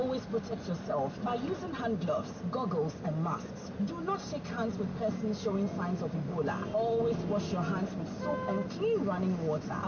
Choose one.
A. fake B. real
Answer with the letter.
B